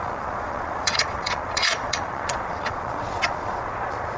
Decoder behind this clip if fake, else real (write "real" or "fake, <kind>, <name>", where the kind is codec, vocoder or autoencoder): fake, vocoder, Vocos